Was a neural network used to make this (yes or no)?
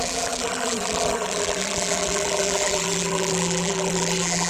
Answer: yes